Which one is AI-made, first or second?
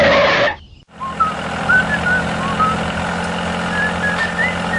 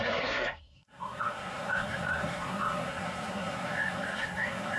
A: second